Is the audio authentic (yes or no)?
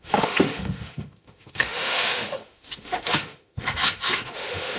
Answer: no